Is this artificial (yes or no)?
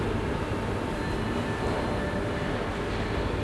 no